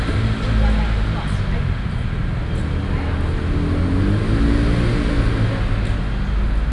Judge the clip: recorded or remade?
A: recorded